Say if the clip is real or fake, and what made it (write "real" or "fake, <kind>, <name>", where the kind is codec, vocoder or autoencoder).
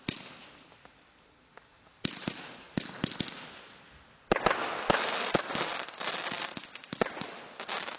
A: real